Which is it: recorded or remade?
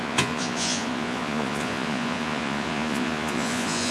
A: remade